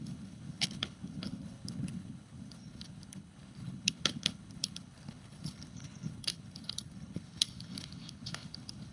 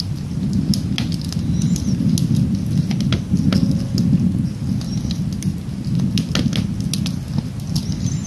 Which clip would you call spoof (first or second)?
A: first